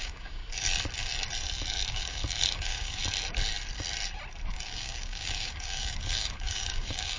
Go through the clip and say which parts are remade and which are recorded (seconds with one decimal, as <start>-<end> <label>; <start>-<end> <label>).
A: 0.0-0.4 remade; 0.4-1.9 recorded; 1.9-3.0 remade; 3.0-4.5 recorded; 4.5-7.2 remade